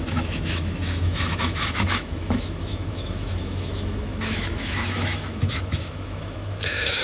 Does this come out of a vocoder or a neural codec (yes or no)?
yes